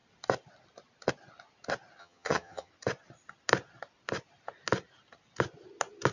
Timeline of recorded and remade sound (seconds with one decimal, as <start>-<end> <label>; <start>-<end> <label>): 0.0-2.0 recorded; 2.0-2.7 remade; 2.7-6.1 recorded